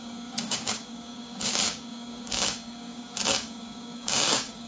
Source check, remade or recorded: remade